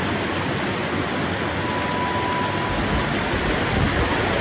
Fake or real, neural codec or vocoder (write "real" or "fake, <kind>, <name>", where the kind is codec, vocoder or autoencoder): real